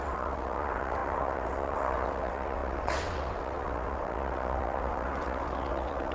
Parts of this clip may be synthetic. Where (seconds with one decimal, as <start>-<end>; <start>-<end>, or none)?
0.0-6.1